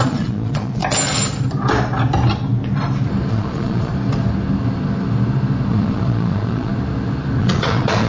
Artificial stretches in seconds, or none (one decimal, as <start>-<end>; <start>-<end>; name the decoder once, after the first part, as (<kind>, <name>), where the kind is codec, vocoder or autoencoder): 0.0-0.8 (vocoder, Vocos); 3.3-3.9; 5.7-6.7; 7.4-8.1